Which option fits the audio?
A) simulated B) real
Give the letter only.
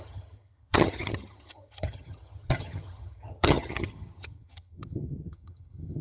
A